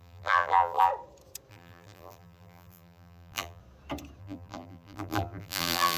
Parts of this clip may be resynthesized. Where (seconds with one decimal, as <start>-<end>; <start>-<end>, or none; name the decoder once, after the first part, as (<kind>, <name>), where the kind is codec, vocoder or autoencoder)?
0.0-0.9 (vocoder, BigVGAN v2); 1.5-3.6; 4.2-6.0